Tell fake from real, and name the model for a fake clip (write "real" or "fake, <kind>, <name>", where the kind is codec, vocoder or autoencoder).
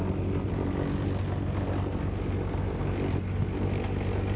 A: real